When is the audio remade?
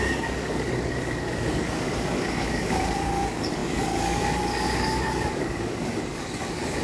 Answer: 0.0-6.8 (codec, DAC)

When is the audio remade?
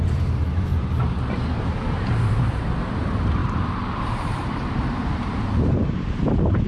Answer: 0.0-3.4 (vocoder, BigVGAN v2); 4.0-6.7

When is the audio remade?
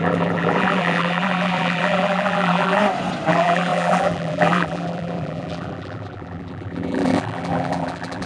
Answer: 0.0-2.8 (vocoder, BigVGAN v2); 3.3-8.3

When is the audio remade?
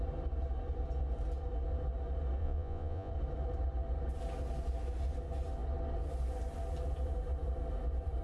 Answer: 2.4-3.1 (vocoder, Vocos)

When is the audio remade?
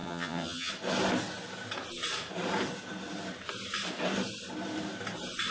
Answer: 0.0-0.7 (vocoder, HiFi-GAN)